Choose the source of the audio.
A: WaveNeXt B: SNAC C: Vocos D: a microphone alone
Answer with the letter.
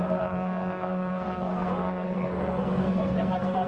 B